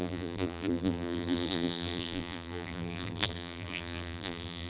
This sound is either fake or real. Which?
fake